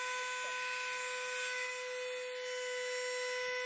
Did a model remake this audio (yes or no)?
no